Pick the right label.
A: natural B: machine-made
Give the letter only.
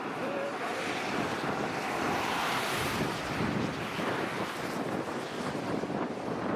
A